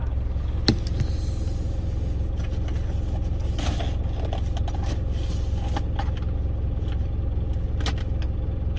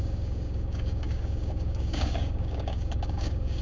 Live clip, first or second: first